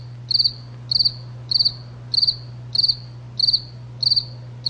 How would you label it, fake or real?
real